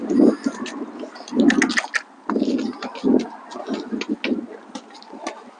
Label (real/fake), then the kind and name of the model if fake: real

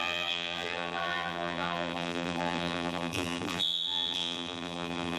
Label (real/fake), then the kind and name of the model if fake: fake, vocoder, BigVGAN v2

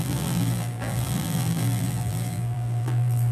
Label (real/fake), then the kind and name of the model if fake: fake, vocoder, BigVGAN v2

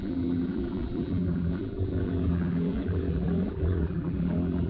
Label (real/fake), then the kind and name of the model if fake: fake, vocoder, BigVGAN v2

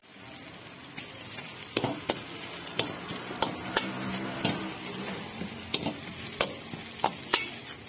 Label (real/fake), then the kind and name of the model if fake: real